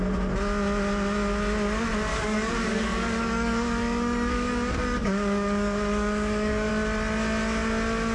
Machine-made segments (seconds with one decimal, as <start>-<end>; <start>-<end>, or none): 2.1-6.7